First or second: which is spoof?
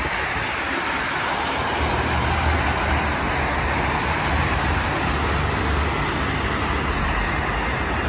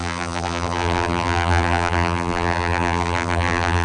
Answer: second